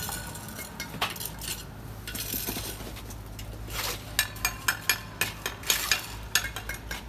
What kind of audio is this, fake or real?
real